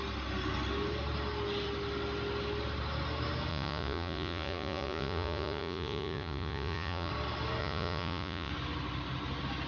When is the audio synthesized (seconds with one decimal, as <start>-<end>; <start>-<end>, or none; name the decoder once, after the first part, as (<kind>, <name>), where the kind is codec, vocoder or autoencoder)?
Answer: 3.5-7.1 (vocoder, Vocos); 7.6-8.5